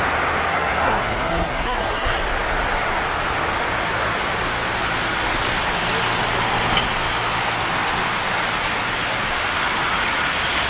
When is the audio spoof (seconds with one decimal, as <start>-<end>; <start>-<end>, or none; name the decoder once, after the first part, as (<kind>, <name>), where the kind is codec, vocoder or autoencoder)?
0.5-2.2 (codec, SNAC)